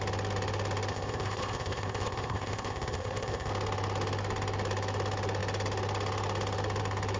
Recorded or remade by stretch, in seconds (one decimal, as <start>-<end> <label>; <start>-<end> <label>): 0.0-0.9 recorded; 0.9-3.5 remade; 3.5-7.2 recorded